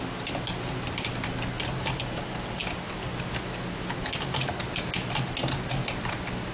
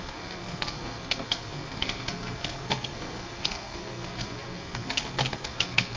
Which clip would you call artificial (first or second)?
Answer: second